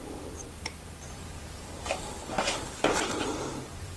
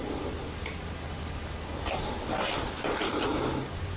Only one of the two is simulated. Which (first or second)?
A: first